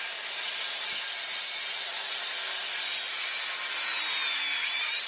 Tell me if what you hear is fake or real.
real